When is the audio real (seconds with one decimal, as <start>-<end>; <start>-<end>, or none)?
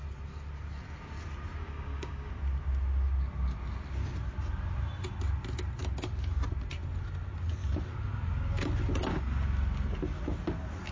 0.0-1.6; 2.3-10.9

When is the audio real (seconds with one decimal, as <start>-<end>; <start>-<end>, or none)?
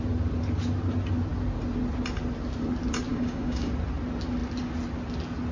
0.0-3.1; 3.7-5.5